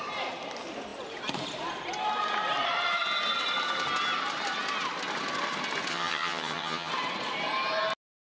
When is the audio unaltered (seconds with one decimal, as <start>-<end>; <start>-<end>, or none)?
0.0-5.9; 6.9-8.3